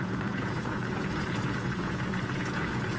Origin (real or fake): fake